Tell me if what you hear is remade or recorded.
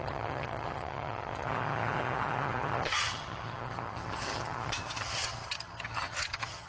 remade